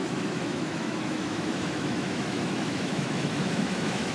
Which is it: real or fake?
fake